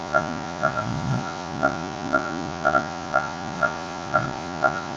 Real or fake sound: fake